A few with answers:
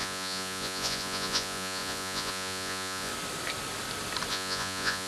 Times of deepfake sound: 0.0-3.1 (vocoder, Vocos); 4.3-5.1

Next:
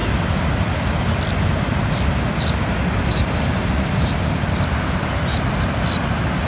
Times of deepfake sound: 3.1-5.5 (vocoder, BigVGAN v2)

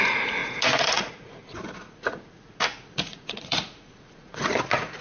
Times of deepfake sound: 0.0-5.0 (vocoder, Vocos)

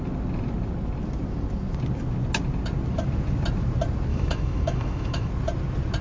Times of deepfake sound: 4.1-5.3 (autoencoder, DAC-VAE)

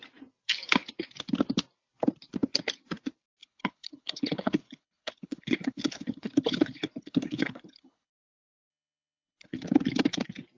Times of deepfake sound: 3.4-8.1 (codec, HILCodec); 8.7-9.6

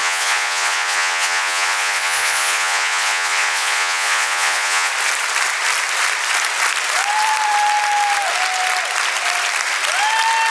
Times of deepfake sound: 0.0-4.9 (vocoder, Vocos)

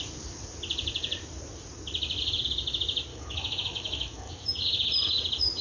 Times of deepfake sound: 3.1-4.3 (autoencoder, DAC-VAE)